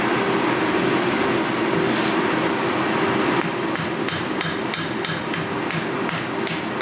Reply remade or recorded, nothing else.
recorded